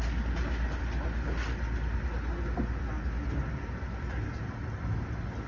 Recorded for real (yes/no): yes